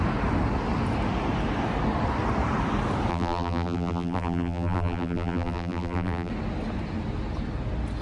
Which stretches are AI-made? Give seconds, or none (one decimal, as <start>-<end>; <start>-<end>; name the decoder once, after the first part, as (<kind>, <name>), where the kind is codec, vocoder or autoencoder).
3.1-6.3 (vocoder, BigVGAN v2)